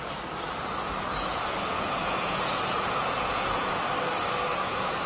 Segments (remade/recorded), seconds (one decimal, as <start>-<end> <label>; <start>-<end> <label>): 0.0-1.3 recorded; 1.3-3.8 remade; 3.8-4.5 recorded; 4.5-5.1 remade